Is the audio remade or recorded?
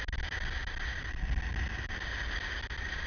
recorded